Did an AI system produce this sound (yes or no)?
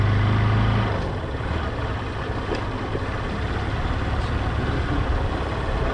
no